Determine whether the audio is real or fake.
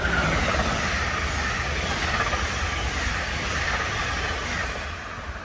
real